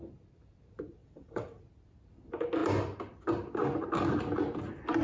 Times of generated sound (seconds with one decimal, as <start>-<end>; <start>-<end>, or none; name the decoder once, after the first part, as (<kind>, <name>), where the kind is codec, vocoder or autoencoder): 1.0-1.6 (vocoder, WaveNeXt)